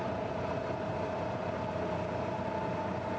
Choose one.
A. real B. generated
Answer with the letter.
A